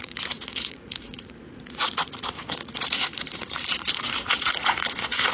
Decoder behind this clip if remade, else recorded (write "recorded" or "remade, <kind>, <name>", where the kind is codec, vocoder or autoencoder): remade, vocoder, Vocos